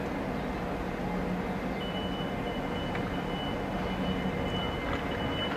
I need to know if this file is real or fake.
real